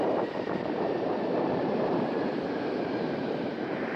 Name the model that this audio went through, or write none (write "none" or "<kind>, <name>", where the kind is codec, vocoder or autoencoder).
vocoder, BigVGAN v2